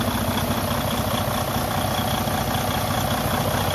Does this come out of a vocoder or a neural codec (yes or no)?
no